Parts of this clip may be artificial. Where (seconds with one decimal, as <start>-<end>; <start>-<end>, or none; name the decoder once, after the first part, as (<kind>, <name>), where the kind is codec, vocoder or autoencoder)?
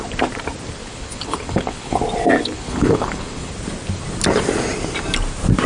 0.8-2.0 (codec, HILCodec); 2.4-3.5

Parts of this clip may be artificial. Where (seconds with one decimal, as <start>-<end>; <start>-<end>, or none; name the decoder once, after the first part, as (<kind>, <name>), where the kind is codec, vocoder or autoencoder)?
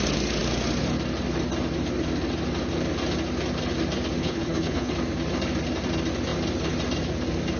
4.2-4.9 (codec, HILCodec)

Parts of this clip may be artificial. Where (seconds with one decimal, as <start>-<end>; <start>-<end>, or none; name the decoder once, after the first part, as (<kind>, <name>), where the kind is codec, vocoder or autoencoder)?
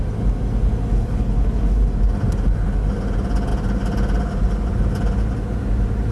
0.9-1.8 (codec, HILCodec)